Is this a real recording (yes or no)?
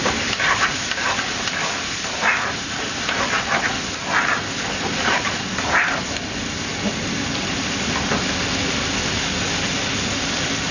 yes